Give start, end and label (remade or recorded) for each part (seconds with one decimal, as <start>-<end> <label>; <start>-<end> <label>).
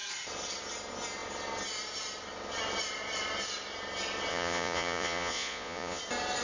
0.0-4.3 recorded; 4.3-6.0 remade; 6.0-6.4 recorded